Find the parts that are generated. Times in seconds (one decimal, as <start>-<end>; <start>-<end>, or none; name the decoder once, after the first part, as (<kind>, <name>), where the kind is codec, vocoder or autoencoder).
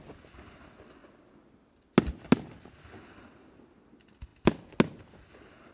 none